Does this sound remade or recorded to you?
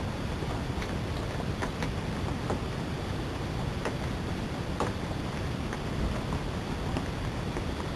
recorded